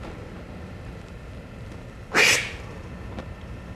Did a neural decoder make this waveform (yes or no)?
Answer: no